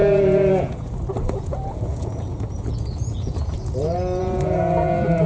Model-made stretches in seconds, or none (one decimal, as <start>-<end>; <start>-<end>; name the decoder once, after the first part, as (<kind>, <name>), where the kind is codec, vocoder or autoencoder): 0.0-3.6 (vocoder, Vocos); 4.2-5.3

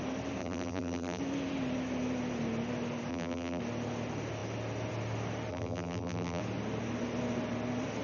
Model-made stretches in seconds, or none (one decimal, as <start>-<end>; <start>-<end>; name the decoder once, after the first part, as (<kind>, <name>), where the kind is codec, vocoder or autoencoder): 0.4-1.2 (vocoder, BigVGAN v2); 3.1-3.6; 5.5-6.4

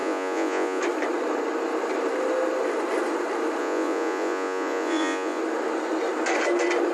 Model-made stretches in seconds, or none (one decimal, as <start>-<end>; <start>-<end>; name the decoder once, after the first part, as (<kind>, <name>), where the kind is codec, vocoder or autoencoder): 0.0-0.8 (vocoder, Vocos); 3.6-5.4

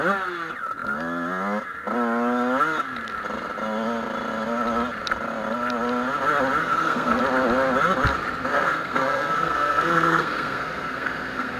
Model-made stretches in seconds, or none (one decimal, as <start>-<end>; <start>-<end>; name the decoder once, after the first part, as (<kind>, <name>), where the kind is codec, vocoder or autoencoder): 6.6-7.2 (codec, SNAC); 8.5-11.6

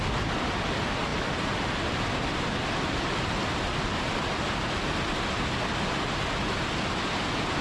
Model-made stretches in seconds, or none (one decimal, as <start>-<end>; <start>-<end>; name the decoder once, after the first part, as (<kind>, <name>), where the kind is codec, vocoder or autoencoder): none

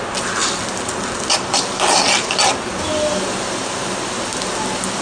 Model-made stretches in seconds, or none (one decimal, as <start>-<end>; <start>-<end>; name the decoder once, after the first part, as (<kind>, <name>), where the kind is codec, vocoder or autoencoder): none

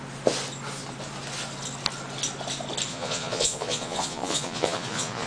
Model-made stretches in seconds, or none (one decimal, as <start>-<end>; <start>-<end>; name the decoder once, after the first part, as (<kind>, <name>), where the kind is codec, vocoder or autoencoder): 2.9-5.3 (vocoder, Vocos)